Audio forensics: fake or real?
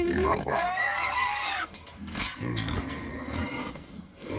fake